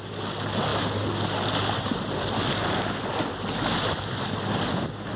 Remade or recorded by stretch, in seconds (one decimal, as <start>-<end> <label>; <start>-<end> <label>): 0.0-5.2 recorded